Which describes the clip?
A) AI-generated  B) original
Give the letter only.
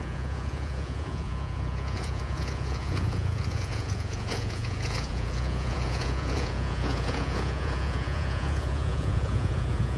A